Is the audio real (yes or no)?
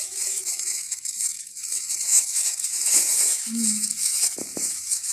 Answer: no